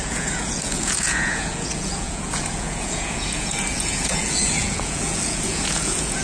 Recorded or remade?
remade